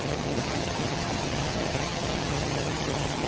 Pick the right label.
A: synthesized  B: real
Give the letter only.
A